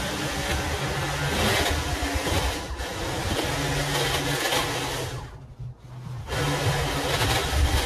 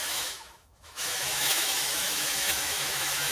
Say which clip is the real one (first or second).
first